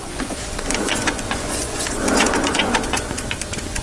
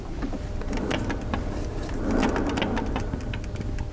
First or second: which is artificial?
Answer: first